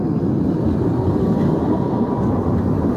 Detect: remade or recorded recorded